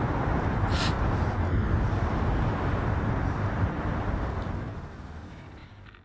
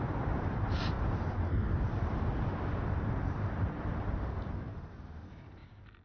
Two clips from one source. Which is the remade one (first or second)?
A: second